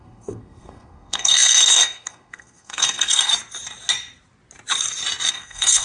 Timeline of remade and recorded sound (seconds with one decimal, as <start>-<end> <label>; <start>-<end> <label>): 0.0-3.3 remade; 3.3-5.3 recorded; 5.3-5.8 remade